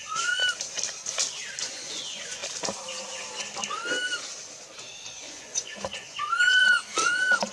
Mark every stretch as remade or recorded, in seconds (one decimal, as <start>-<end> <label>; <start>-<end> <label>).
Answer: 0.0-0.4 remade; 0.4-1.6 recorded; 1.6-2.4 remade; 2.4-5.1 recorded; 5.1-7.5 remade